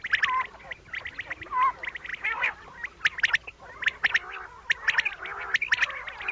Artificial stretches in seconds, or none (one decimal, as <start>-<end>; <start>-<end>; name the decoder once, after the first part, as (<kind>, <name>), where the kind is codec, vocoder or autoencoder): none